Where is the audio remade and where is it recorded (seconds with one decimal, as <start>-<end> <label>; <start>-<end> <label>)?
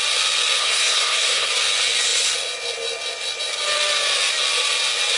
0.0-0.6 recorded; 0.6-1.5 remade; 1.5-5.2 recorded